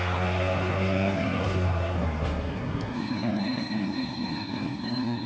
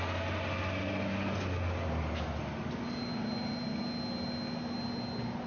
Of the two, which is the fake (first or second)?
first